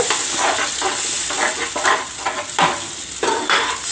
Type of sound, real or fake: real